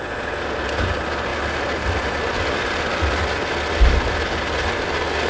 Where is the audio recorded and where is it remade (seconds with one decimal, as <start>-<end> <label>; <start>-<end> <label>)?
0.0-5.3 recorded